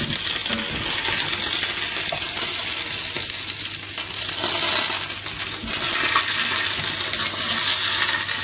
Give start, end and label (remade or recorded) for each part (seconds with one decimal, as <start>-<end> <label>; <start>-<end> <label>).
0.0-8.4 recorded